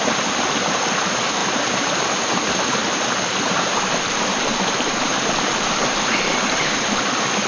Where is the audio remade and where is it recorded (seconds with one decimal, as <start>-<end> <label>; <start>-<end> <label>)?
0.0-5.1 recorded; 5.1-6.1 remade; 6.1-7.5 recorded